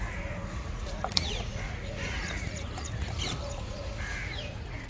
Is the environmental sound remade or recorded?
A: remade